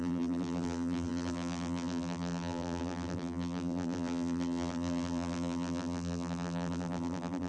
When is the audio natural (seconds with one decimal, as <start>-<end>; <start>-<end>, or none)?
none

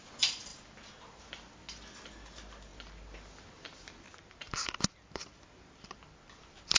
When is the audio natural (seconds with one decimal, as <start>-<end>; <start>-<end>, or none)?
0.0-6.8

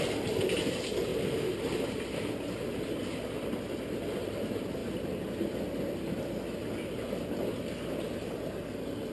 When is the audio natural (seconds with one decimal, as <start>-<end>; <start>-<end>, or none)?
0.0-1.1; 2.3-4.8; 5.5-9.1

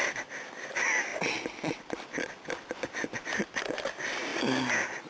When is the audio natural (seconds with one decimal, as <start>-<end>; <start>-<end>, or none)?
1.1-1.8; 4.3-5.1

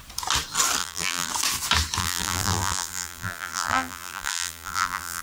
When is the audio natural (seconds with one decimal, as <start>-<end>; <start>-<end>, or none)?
0.0-0.8; 1.3-2.0

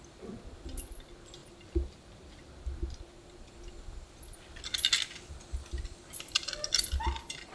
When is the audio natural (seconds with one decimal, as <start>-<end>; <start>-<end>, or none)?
0.0-1.4; 2.5-7.5

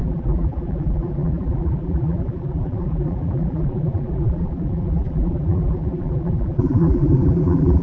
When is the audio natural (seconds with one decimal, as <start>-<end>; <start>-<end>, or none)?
none

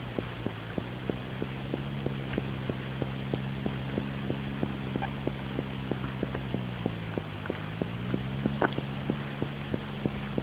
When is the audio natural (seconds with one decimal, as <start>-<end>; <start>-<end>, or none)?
0.0-10.4